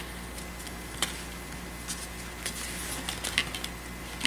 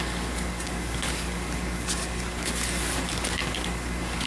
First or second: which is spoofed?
second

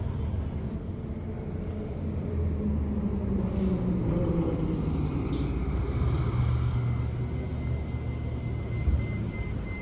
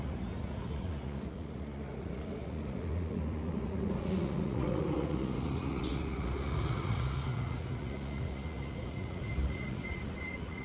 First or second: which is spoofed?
second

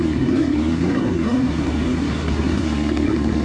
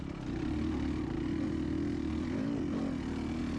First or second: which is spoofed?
first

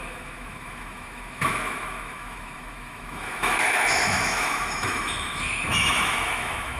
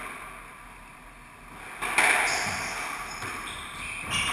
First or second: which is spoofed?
first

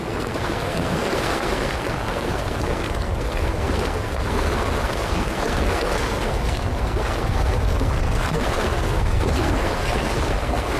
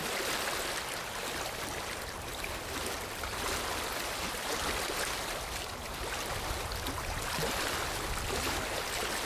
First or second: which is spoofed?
first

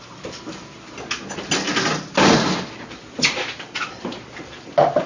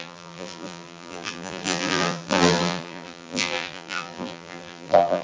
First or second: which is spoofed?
second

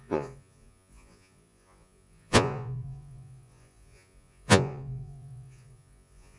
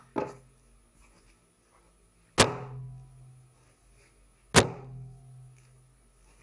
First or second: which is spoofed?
first